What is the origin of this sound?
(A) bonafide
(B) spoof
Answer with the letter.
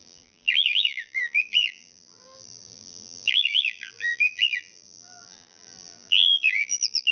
B